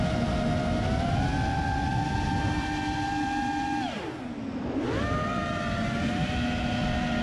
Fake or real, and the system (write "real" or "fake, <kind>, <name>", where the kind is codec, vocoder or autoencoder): real